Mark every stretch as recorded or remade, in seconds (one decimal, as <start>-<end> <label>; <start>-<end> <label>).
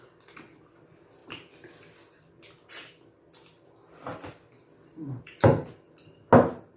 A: 0.0-1.2 recorded; 1.2-5.2 remade; 5.2-6.8 recorded